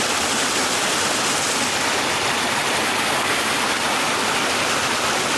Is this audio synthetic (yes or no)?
no